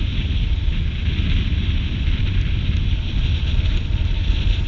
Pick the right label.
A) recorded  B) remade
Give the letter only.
A